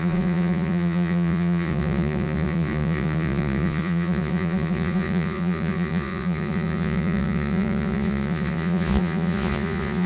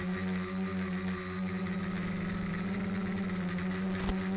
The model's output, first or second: first